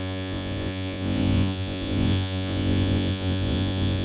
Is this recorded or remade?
remade